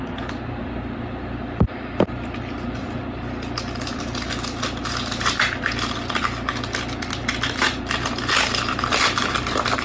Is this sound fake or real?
real